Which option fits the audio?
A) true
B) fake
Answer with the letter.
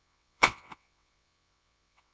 B